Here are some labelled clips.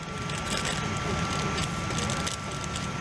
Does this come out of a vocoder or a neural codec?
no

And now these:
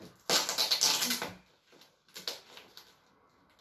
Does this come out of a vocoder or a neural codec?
no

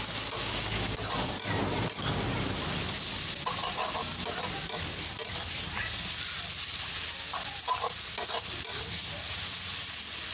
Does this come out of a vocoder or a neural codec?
no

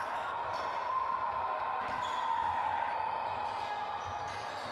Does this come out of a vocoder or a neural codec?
no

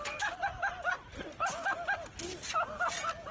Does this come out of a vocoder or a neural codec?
no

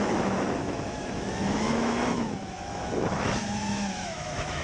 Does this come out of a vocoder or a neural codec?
yes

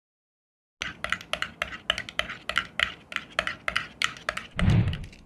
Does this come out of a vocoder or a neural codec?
no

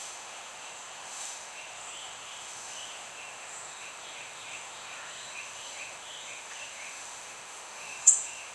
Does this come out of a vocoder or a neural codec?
yes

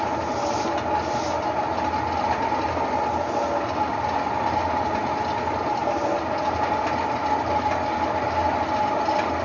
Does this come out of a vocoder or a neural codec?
no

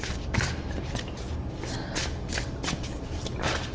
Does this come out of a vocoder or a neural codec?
no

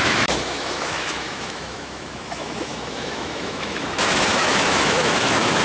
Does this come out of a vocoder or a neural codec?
yes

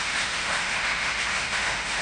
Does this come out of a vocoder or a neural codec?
yes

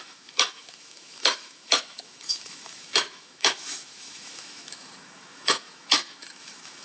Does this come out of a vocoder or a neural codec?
yes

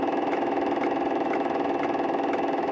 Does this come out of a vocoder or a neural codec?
yes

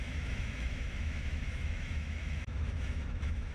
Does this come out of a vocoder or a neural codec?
yes